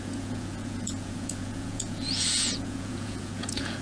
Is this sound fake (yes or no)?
yes